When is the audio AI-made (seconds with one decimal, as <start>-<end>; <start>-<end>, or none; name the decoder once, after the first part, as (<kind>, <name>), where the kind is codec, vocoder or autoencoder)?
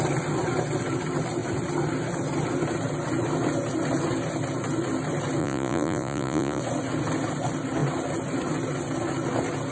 5.4-6.6 (vocoder, Vocos)